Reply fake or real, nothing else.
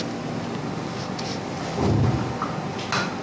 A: real